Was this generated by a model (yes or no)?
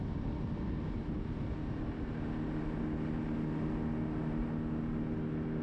no